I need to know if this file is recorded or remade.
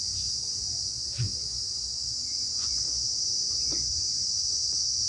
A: remade